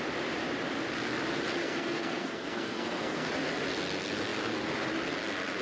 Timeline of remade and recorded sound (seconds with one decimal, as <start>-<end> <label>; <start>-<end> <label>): 0.0-1.6 recorded; 1.6-3.3 remade; 3.3-5.6 recorded

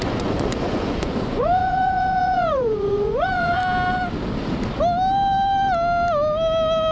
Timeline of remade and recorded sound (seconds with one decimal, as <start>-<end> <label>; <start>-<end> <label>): 0.0-3.6 remade; 3.6-6.9 recorded

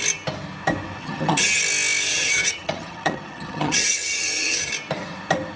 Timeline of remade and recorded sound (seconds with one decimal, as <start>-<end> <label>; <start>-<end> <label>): 0.0-1.0 recorded; 1.0-1.6 remade; 1.6-2.1 recorded; 2.1-4.7 remade; 4.7-5.6 recorded

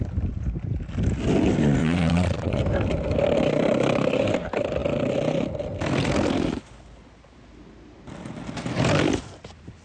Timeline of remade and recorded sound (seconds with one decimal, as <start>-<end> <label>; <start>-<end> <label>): 0.0-1.8 recorded; 1.8-2.6 remade; 2.6-9.8 recorded

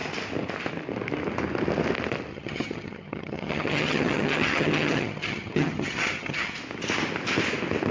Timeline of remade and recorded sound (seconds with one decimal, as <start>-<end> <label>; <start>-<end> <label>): 0.0-2.3 recorded; 2.3-6.6 remade; 6.6-7.9 recorded

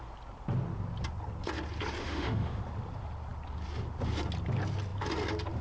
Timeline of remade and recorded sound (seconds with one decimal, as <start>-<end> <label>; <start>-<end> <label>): 0.0-2.0 recorded; 2.0-2.6 remade; 2.6-5.6 recorded

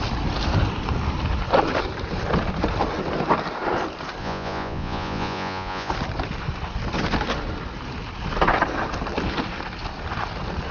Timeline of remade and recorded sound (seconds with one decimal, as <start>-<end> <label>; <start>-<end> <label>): 0.0-4.2 recorded; 4.2-5.9 remade; 5.9-10.7 recorded

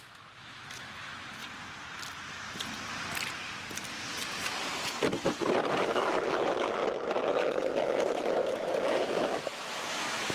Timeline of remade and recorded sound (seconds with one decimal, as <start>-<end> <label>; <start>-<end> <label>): 0.0-1.4 remade; 1.4-5.8 recorded; 5.8-6.8 remade; 6.8-7.4 recorded; 7.4-10.3 remade